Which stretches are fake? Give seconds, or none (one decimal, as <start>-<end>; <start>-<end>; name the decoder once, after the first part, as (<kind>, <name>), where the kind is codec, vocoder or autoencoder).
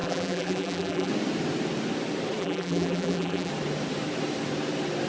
0.0-1.1 (vocoder, BigVGAN v2); 2.4-3.5